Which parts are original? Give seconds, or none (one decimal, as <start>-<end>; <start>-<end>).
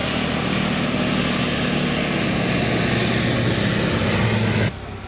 0.0-5.1